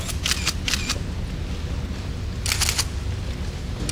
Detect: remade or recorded recorded